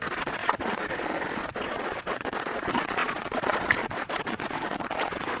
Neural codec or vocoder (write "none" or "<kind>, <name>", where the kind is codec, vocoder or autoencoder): vocoder, Vocos